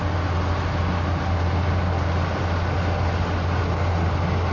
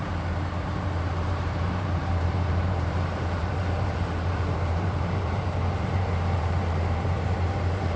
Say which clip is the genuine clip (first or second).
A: first